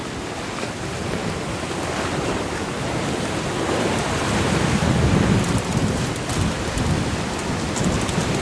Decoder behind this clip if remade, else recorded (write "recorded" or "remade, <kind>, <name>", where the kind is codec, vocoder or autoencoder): recorded